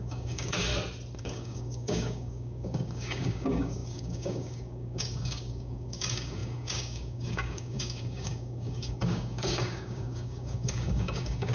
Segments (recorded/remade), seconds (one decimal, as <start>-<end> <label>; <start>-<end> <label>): 0.0-0.7 remade; 0.7-1.2 recorded; 1.2-11.5 remade